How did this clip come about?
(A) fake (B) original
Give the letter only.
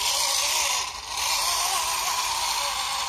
B